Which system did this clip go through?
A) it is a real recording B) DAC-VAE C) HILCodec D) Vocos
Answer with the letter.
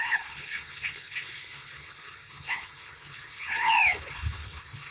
C